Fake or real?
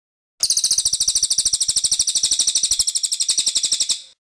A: real